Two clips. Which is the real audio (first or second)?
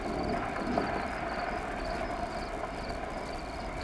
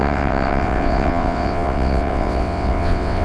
first